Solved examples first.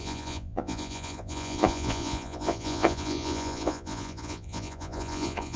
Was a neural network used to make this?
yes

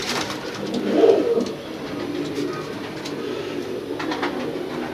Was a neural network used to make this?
no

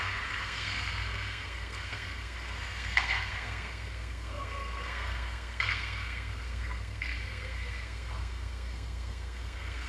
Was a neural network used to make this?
yes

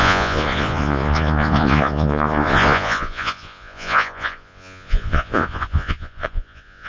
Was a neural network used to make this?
yes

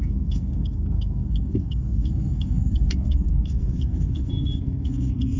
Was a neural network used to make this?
yes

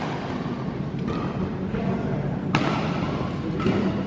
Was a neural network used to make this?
no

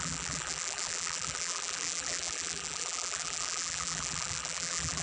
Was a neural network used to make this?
yes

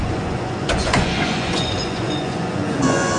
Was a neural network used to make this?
yes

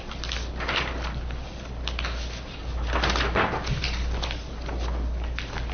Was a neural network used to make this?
no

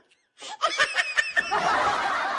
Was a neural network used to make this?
no